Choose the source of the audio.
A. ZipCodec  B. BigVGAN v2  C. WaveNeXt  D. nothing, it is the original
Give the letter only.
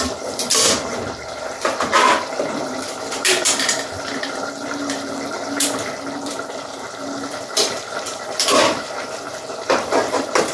B